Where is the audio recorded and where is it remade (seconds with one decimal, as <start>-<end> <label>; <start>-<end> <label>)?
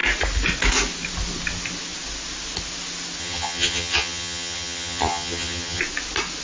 0.0-3.2 recorded; 3.2-5.8 remade; 5.8-6.4 recorded